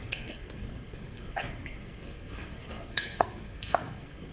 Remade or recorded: remade